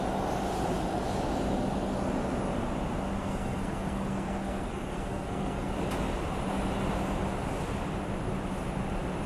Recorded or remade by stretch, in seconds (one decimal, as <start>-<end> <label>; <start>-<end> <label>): 0.0-3.2 recorded; 3.2-5.7 remade; 5.7-9.3 recorded